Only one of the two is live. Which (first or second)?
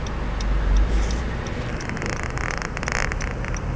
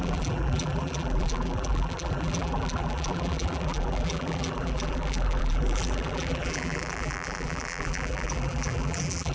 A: first